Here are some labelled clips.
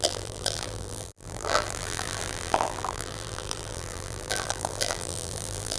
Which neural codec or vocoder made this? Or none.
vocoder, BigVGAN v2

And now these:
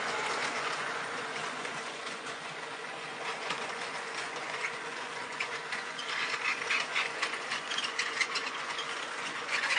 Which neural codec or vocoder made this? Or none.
vocoder, Vocos